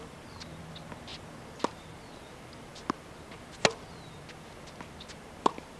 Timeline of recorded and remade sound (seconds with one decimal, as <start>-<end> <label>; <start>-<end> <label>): 0.0-5.8 recorded